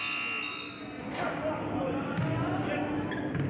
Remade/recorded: recorded